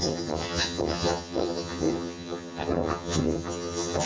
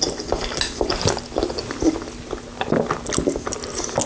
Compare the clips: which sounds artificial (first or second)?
first